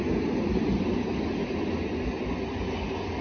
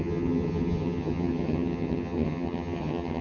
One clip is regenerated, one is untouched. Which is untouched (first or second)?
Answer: first